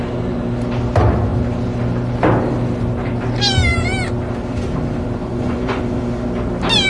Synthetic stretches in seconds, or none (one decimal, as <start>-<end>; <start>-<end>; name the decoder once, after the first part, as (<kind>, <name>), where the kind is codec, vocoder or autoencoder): 5.2-5.8 (vocoder, Vocos)